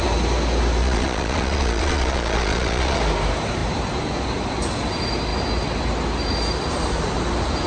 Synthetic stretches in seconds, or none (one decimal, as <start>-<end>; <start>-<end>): 0.8-3.0